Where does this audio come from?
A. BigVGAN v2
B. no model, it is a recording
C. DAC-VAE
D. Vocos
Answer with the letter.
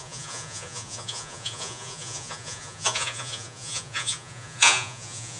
D